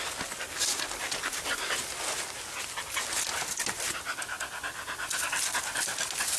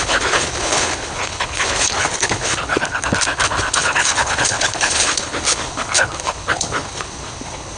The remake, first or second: second